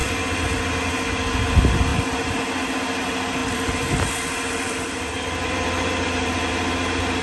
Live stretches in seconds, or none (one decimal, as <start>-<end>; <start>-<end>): 0.0-3.4; 6.5-7.2